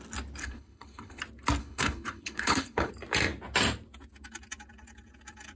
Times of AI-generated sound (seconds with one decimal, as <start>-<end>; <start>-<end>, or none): 0.4-1.2; 1.6-2.9